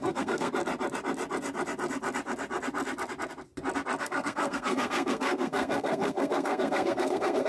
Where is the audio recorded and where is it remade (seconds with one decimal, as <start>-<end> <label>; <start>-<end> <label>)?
0.0-0.5 remade; 0.5-4.0 recorded; 4.0-7.5 remade